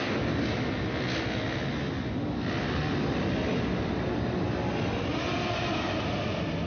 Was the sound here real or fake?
real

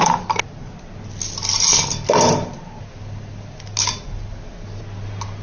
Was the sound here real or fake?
real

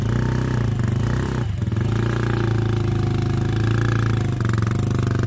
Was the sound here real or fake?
real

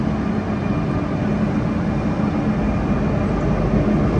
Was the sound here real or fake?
real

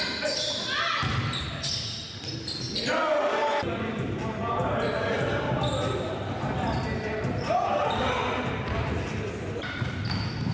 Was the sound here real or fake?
real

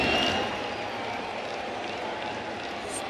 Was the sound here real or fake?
real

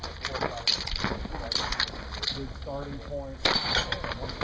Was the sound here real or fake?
real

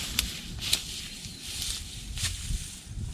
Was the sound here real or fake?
real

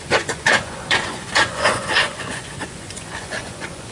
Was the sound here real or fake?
fake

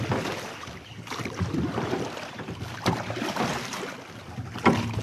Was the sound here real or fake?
real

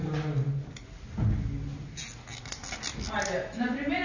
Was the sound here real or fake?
real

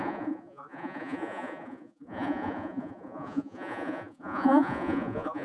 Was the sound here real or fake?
fake